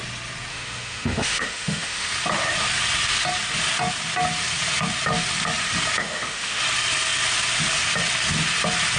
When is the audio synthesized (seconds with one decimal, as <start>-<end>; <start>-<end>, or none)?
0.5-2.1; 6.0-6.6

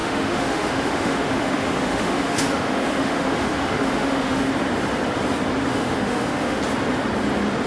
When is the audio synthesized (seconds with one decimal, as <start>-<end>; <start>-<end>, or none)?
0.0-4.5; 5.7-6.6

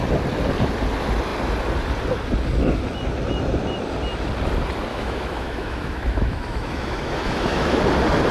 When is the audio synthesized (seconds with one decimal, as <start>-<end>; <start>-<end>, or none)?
4.9-7.8

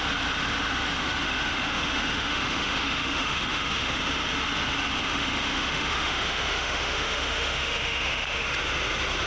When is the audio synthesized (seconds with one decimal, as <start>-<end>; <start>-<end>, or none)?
1.0-4.0; 5.0-8.5